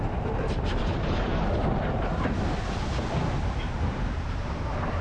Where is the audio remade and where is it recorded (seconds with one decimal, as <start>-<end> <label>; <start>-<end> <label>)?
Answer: 0.0-5.0 recorded